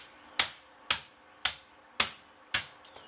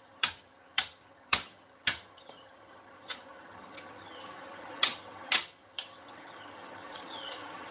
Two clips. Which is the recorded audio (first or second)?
first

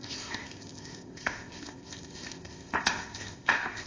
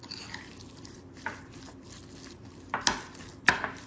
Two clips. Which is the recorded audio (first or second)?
second